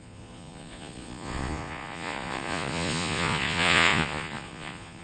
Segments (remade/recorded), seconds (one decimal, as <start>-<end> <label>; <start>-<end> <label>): 0.0-5.0 remade